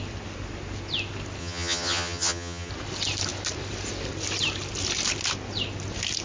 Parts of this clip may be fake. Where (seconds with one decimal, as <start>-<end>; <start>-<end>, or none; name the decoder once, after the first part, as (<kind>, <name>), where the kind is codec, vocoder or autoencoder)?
1.4-2.7 (vocoder, HiFi-GAN)